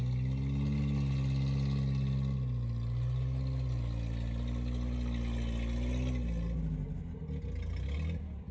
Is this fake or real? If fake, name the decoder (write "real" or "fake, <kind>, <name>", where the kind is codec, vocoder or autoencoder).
real